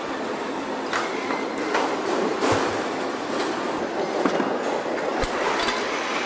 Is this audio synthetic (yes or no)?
no